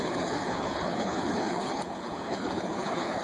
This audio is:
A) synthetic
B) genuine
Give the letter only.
A